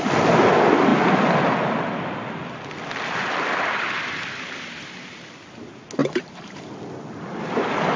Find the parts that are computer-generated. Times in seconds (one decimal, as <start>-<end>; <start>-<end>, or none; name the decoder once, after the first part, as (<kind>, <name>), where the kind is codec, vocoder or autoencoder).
6.0-6.7 (vocoder, BigVGAN v2)